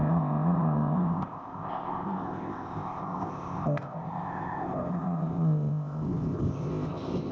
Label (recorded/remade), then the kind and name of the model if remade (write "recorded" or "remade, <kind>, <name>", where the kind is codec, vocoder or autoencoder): remade, codec, ZipCodec